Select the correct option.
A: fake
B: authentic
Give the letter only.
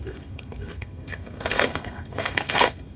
A